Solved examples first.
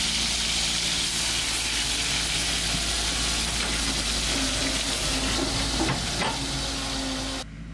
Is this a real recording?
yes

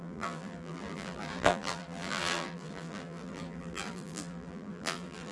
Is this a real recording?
no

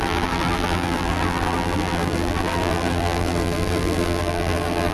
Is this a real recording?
no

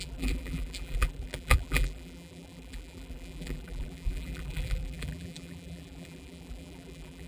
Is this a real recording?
no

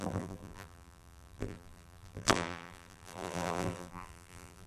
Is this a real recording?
no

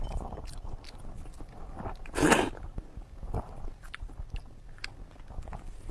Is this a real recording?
yes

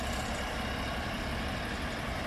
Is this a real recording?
yes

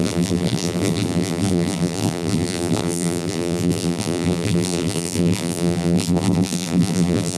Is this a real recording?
no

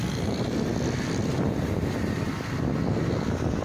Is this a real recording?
yes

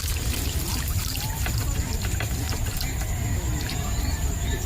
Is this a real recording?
no